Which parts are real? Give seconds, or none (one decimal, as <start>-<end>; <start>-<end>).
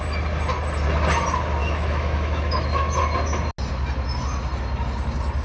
0.0-1.6; 3.0-5.4